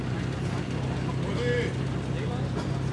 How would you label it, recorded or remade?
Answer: recorded